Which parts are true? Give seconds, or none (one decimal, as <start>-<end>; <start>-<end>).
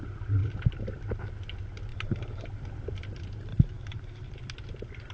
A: 0.0-1.9; 2.4-3.5; 4.3-5.1